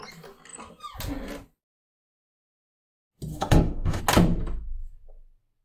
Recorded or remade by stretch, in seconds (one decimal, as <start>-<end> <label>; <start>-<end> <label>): 0.0-3.3 recorded; 3.3-4.0 remade; 4.0-5.6 recorded